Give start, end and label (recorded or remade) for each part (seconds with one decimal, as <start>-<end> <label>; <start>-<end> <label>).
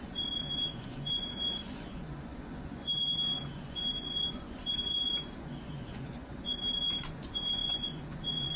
0.0-8.6 remade